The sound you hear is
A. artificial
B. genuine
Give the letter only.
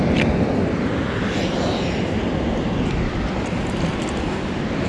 B